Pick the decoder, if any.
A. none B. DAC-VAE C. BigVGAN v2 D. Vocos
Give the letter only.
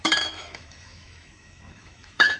B